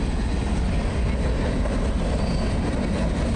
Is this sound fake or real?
real